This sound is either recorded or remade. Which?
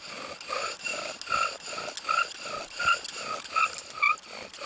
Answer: recorded